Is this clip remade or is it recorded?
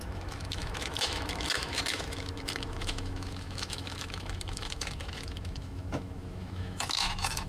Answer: remade